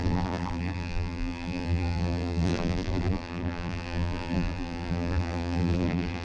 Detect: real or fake fake